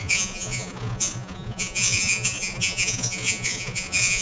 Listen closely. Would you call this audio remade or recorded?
remade